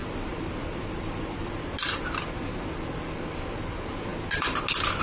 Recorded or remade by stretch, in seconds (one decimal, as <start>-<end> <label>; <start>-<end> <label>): 0.0-5.0 recorded

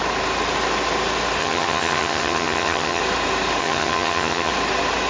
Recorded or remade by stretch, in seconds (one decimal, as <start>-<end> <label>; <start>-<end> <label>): 0.0-1.4 recorded; 1.4-3.0 remade; 3.0-3.6 recorded; 3.6-4.5 remade; 4.5-5.1 recorded